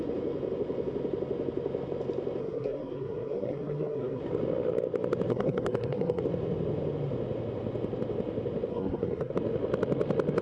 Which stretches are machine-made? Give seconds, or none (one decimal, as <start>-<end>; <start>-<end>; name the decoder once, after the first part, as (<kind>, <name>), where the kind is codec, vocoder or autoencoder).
2.4-4.2 (codec, SNAC); 5.3-6.2; 8.7-9.3